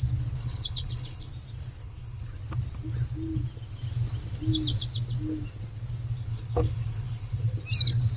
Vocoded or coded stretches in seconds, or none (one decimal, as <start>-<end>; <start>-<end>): 0.4-1.3; 1.8-2.3; 6.3-7.4